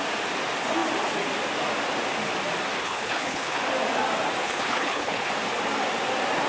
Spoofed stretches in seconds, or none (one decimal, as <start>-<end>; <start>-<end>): 2.8-3.6; 4.4-5.3